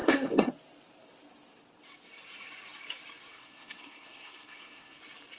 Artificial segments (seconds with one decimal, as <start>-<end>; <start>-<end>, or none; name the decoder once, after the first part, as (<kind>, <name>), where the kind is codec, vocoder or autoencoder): 0.0-0.5 (codec, SNAC); 3.3-5.0